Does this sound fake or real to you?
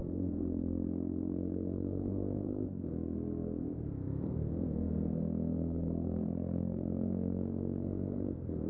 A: fake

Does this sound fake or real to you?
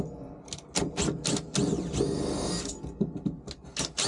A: real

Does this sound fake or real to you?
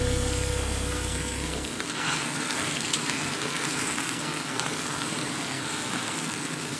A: fake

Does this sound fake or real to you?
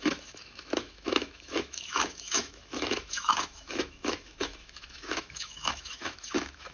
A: fake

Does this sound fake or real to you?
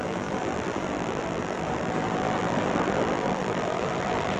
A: fake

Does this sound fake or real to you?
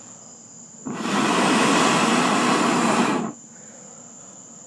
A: real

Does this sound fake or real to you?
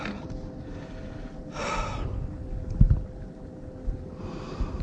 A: real